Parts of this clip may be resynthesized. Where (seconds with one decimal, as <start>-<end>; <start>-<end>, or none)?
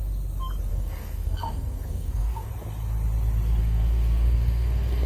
0.7-2.5; 3.6-5.1